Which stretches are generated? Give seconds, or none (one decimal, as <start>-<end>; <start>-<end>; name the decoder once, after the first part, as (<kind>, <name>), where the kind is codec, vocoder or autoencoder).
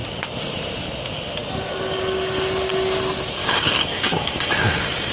3.4-5.1 (codec, DAC)